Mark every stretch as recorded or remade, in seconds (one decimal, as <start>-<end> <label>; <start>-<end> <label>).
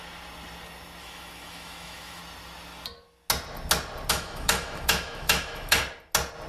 0.0-1.0 recorded; 1.0-2.2 remade; 2.2-4.1 recorded; 4.1-5.8 remade; 5.8-6.5 recorded